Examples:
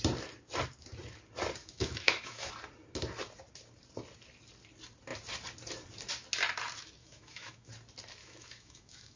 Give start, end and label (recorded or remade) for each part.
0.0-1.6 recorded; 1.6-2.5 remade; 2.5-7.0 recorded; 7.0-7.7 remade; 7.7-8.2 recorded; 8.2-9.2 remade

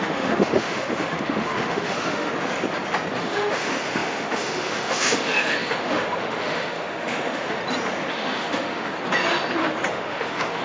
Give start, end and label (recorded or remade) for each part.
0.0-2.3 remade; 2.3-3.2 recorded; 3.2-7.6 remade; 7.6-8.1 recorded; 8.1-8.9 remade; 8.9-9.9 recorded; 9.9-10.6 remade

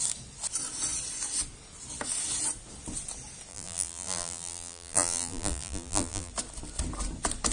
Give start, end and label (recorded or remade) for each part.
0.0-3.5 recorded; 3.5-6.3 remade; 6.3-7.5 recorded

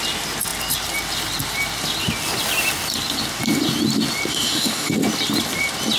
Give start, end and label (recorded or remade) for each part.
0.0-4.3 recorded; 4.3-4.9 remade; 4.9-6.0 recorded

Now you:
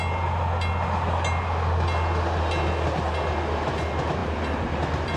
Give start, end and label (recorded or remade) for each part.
0.0-5.2 recorded

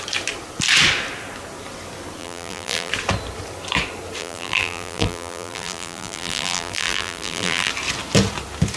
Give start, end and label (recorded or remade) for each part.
0.0-2.2 recorded; 2.2-2.9 remade; 2.9-4.2 recorded; 4.2-7.7 remade; 7.7-8.8 recorded